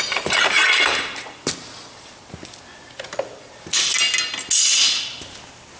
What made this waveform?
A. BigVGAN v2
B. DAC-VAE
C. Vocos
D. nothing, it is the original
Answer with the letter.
D